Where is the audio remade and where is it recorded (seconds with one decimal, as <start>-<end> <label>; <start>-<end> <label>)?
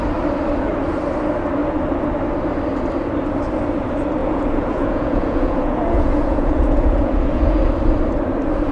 0.0-4.2 recorded; 4.2-7.7 remade; 7.7-8.7 recorded